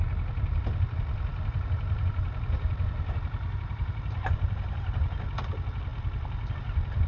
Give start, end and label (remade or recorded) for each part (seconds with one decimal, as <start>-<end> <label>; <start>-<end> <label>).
0.0-1.3 recorded; 1.3-5.0 remade; 5.0-7.1 recorded